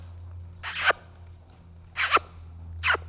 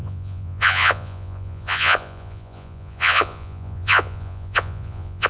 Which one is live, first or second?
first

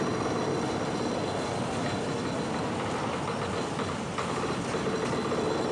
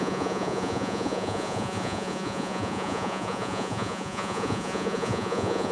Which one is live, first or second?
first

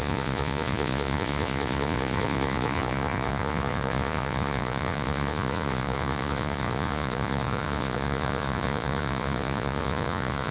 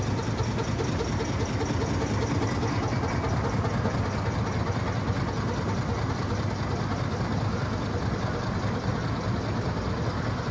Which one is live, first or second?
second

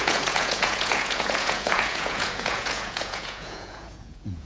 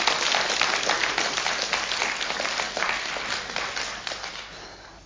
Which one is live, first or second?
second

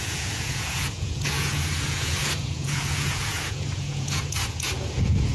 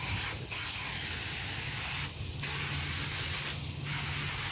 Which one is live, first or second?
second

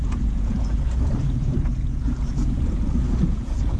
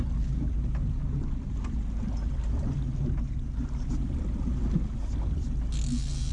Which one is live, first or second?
second